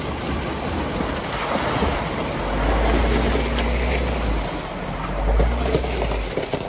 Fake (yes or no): no